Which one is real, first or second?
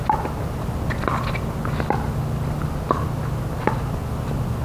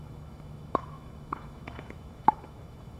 first